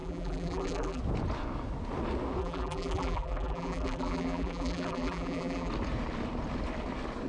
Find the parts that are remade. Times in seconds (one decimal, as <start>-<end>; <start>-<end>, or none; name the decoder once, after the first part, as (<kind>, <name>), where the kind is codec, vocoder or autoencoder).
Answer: 0.0-1.0 (vocoder, BigVGAN v2); 2.4-5.7